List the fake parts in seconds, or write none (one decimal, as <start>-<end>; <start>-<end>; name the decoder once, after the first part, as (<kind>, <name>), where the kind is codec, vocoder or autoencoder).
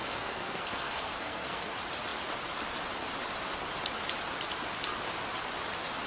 0.0-1.7 (codec, SNAC)